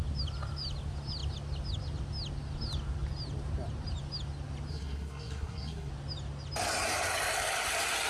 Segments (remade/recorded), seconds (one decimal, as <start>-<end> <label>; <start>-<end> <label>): 0.0-4.7 recorded; 4.7-5.9 remade; 5.9-8.1 recorded